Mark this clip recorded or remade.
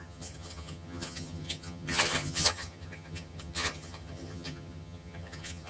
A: remade